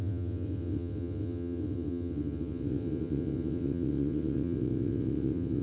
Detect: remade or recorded remade